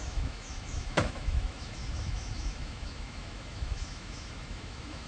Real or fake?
fake